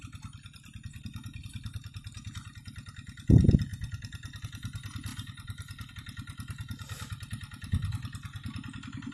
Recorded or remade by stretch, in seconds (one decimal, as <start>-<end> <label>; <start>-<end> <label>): 0.0-9.1 recorded